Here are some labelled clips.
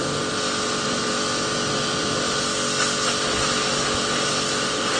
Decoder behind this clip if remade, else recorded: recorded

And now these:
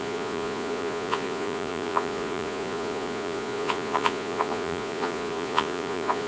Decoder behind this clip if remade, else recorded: remade, vocoder, Vocos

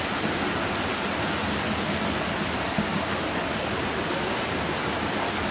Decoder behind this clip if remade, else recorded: recorded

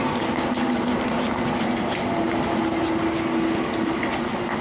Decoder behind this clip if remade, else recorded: recorded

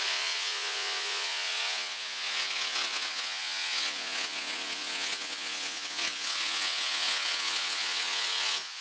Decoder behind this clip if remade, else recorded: remade, vocoder, Vocos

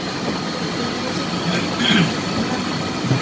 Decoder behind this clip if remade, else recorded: recorded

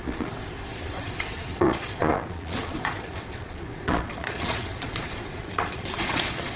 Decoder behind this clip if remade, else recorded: remade, vocoder, Vocos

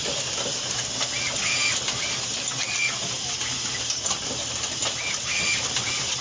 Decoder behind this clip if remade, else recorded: recorded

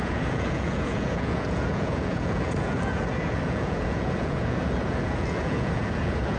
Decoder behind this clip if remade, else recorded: remade, vocoder, Vocos